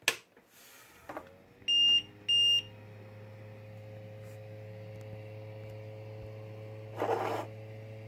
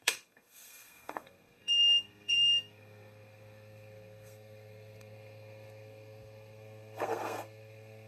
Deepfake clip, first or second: second